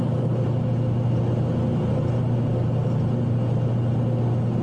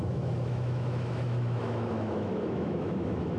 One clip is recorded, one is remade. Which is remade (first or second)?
second